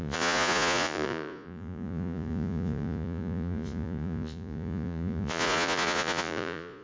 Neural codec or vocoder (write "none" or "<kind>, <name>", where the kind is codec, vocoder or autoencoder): vocoder, Vocos